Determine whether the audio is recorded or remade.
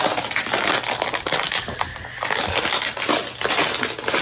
recorded